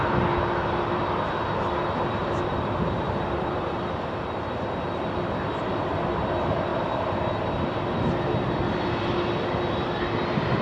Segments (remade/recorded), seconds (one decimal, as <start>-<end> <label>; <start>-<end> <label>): 0.0-2.2 recorded; 2.2-4.3 remade; 4.3-10.6 recorded